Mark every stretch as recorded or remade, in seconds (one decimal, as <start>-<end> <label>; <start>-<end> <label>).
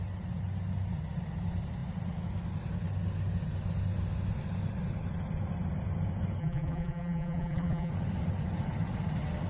0.0-6.4 recorded; 6.4-7.9 remade; 7.9-9.5 recorded